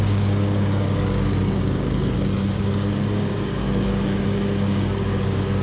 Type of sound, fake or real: fake